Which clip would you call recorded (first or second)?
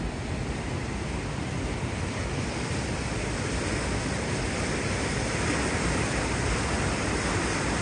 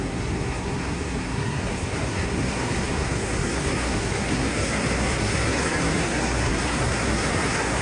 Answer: first